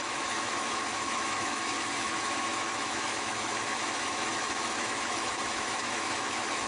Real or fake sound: fake